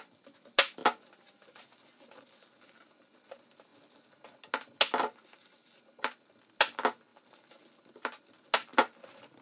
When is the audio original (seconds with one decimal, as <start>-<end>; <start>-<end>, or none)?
0.0-9.4

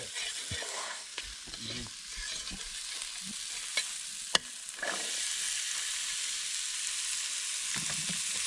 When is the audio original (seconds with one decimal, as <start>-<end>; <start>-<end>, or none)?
0.0-0.7; 1.2-8.5

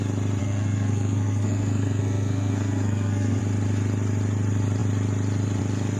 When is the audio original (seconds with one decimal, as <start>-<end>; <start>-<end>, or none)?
0.0-0.4; 3.4-6.0

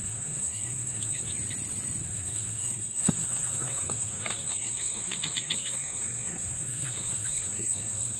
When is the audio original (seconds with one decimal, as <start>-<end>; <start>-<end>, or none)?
1.3-2.0